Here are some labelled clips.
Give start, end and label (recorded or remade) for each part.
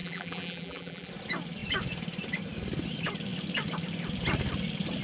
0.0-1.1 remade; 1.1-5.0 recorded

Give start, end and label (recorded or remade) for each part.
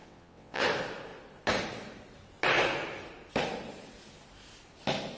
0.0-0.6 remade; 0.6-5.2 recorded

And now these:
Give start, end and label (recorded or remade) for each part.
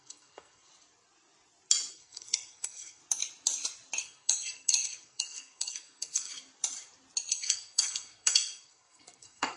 0.0-0.7 remade; 0.7-1.9 recorded; 1.9-3.0 remade; 3.0-4.0 recorded; 4.0-6.3 remade; 6.3-7.3 recorded; 7.3-9.6 remade